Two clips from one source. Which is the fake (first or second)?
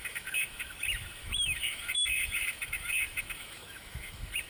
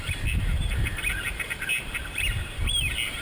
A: first